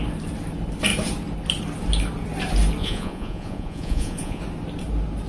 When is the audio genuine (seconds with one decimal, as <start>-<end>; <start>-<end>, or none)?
0.0-2.8; 4.4-5.3

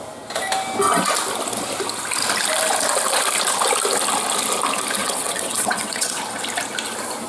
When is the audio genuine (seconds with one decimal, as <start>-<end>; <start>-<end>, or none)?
0.0-5.0; 6.2-7.3

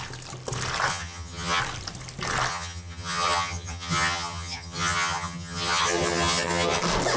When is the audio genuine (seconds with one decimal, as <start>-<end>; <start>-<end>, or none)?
0.0-0.9; 1.6-2.5; 6.8-7.2